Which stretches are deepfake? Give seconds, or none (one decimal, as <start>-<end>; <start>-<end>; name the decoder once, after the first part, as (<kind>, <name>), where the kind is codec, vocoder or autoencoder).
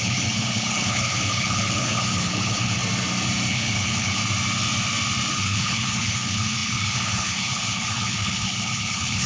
0.0-2.8 (codec, HILCodec); 3.5-4.2; 5.3-9.3